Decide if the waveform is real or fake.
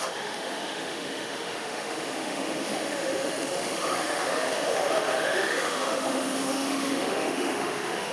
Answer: fake